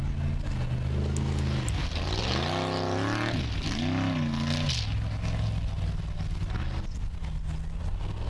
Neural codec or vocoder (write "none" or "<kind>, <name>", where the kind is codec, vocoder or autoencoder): none